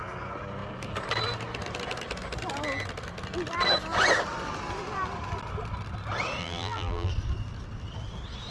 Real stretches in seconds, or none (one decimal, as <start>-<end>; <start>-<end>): 0.0-6.4; 7.1-8.5